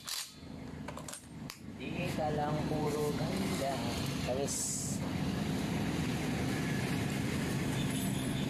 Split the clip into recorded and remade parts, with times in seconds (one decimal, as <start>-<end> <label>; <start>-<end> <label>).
0.0-0.4 recorded; 0.4-3.7 remade; 3.7-8.5 recorded